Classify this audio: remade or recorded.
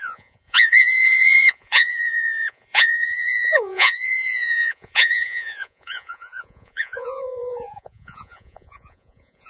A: remade